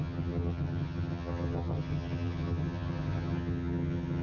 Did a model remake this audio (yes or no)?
yes